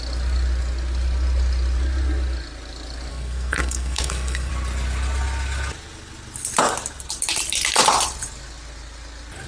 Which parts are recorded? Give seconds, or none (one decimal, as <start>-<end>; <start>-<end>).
0.0-3.1; 4.5-9.5